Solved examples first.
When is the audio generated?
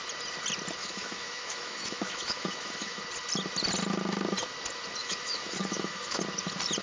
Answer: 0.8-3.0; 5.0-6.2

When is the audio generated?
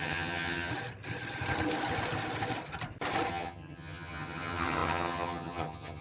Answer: 0.0-0.7; 3.3-6.0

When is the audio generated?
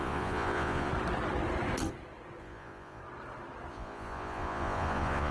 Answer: 0.0-0.9; 2.4-3.0; 3.7-5.3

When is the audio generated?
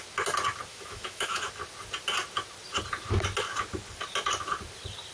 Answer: 0.7-1.5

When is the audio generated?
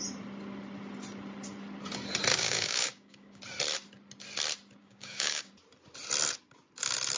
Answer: 2.3-3.4; 4.8-5.5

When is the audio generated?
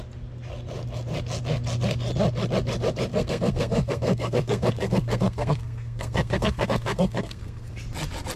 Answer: 3.1-7.7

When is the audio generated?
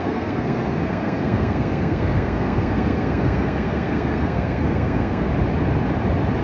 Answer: 0.0-5.3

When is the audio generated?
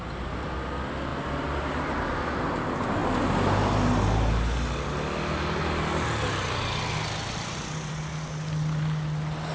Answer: none